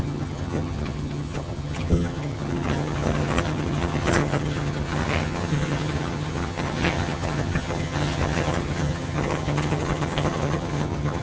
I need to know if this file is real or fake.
fake